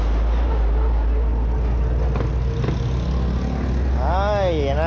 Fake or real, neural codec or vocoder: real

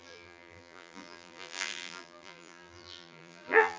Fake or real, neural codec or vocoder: fake, vocoder, BigVGAN v2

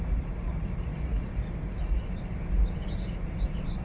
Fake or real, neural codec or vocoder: fake, vocoder, BigVGAN v2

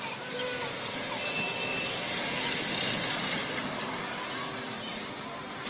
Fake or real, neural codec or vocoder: real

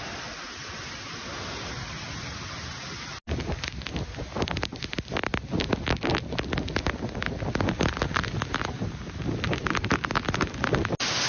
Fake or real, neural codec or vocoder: real